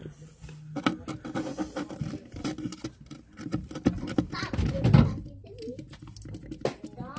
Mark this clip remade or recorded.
recorded